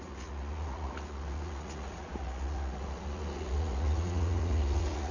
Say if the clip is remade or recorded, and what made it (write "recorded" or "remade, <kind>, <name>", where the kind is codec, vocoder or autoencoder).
remade, vocoder, Vocos